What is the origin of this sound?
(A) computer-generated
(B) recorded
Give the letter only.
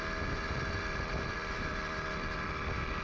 B